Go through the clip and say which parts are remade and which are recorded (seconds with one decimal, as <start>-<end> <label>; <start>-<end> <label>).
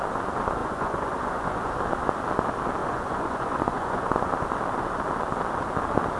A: 0.0-0.6 recorded; 0.6-1.7 remade; 1.7-2.8 recorded; 2.8-4.3 remade; 4.3-6.2 recorded